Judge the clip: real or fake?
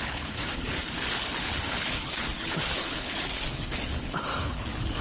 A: fake